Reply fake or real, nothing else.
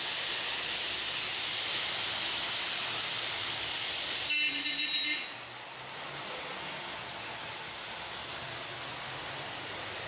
real